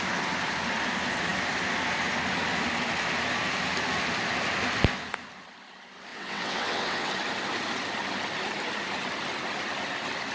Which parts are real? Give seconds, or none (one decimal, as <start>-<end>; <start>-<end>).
0.0-6.1; 7.1-10.3